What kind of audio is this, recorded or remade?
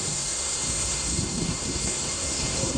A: remade